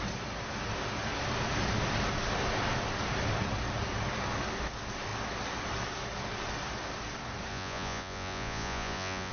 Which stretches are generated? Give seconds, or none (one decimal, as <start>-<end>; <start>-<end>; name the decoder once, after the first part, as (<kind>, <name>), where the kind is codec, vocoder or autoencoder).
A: 7.5-9.3 (vocoder, Vocos)

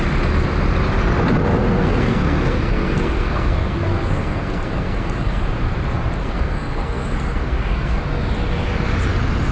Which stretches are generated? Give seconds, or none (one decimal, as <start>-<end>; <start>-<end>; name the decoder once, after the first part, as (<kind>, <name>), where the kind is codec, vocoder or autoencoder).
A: 1.5-5.4 (codec, SNAC); 6.2-8.0

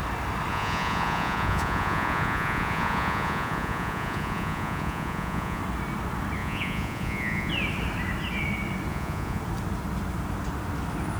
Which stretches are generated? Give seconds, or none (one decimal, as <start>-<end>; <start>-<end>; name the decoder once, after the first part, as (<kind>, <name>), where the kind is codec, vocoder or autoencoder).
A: 0.5-5.6 (vocoder, Vocos); 6.4-7.5; 8.9-9.4

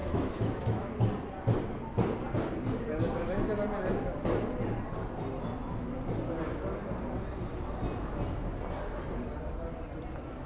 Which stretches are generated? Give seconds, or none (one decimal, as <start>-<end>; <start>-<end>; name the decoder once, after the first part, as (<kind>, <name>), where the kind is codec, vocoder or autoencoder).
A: 0.0-0.9 (autoencoder, DAC-VAE)

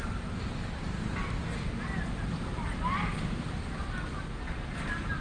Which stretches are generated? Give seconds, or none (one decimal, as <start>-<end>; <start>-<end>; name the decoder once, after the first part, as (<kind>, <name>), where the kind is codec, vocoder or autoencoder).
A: none

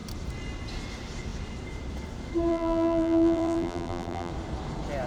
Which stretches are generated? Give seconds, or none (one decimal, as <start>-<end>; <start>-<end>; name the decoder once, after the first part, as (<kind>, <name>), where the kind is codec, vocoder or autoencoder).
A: 2.5-4.3 (vocoder, BigVGAN v2)

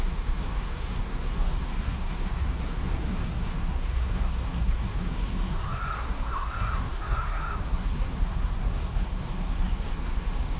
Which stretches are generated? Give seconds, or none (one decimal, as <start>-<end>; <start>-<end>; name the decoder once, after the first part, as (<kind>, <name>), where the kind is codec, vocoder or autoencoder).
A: 0.0-10.6 (codec, SNAC)